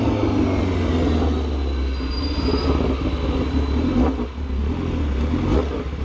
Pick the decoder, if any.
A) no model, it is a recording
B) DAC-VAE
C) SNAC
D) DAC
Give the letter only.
A